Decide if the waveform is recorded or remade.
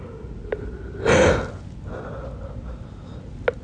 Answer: recorded